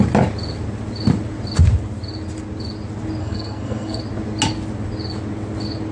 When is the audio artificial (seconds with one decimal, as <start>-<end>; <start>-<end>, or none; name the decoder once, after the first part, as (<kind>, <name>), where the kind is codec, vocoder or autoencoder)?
3.2-4.0 (codec, SNAC)